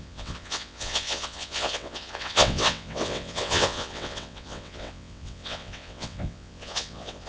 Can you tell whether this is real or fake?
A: fake